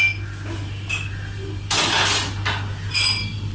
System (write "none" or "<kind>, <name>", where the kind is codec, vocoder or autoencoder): none